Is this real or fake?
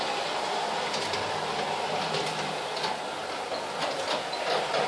real